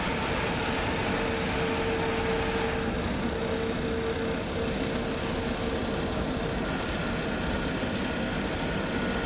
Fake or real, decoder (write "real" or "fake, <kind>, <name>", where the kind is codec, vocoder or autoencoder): real